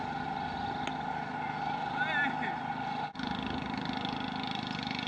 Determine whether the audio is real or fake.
real